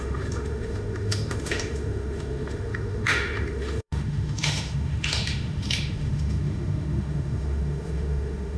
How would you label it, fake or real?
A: fake